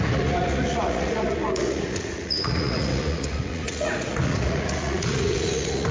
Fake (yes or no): yes